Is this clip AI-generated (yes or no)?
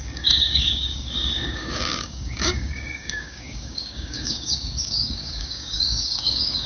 yes